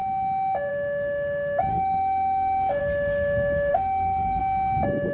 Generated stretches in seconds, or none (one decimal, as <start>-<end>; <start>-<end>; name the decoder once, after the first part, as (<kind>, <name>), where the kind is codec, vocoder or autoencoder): 1.7-2.8 (autoencoder, DAC-VAE); 3.7-4.4